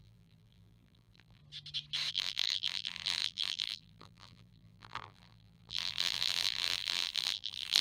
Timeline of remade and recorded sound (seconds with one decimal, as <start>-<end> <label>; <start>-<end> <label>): 0.0-1.4 remade; 1.4-2.1 recorded; 2.1-7.8 remade